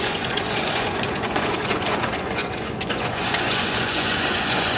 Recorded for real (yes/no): no